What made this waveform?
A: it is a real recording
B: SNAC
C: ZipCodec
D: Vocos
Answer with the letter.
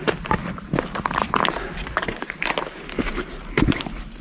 A